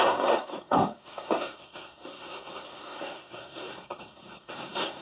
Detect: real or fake fake